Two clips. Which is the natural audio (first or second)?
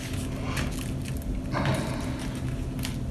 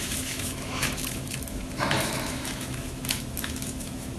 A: first